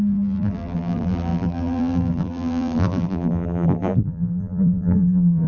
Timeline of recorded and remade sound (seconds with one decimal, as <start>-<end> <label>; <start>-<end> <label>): 0.0-5.5 remade